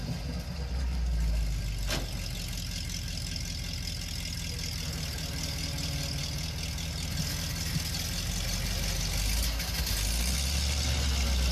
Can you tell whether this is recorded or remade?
recorded